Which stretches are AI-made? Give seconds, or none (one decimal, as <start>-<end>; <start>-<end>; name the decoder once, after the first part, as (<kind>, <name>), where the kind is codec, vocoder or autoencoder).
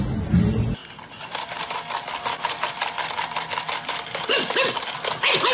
none